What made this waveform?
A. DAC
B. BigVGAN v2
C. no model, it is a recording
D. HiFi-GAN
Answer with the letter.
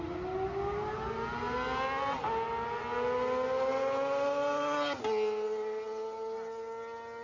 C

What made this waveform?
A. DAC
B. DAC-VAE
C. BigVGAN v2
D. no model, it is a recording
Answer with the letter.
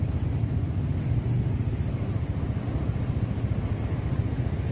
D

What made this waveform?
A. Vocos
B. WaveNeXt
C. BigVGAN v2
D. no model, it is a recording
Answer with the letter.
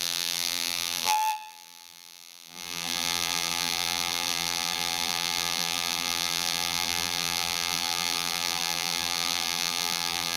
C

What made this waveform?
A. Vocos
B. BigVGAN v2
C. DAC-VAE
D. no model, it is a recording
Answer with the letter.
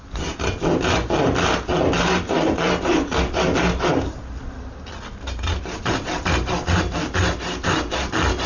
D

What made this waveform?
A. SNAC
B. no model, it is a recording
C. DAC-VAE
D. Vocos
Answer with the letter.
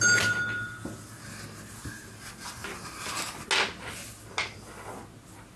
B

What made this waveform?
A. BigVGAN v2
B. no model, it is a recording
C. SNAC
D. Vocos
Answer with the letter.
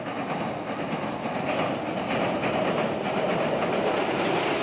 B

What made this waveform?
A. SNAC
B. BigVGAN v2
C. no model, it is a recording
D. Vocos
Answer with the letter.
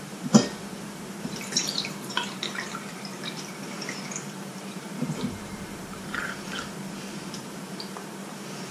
B